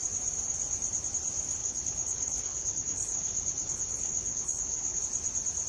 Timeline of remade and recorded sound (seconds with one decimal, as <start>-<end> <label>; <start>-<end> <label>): 0.0-1.6 recorded; 1.6-5.0 remade; 5.0-5.7 recorded